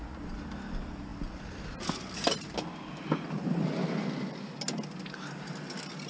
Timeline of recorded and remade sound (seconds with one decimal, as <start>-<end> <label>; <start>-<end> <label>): 0.0-6.1 recorded